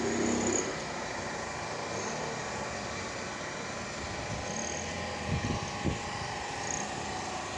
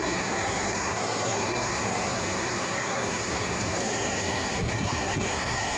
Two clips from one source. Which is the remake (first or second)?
second